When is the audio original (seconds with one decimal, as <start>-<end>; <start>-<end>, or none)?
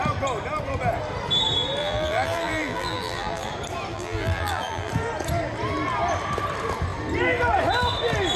0.0-1.8; 3.5-3.9; 4.9-8.4